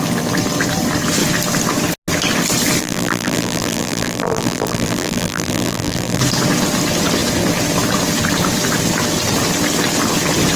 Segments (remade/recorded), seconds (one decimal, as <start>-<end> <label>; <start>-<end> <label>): 0.0-2.8 recorded; 2.8-6.2 remade; 6.2-10.6 recorded